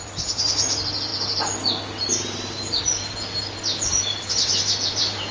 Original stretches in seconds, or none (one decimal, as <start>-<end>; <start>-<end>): 0.0-5.3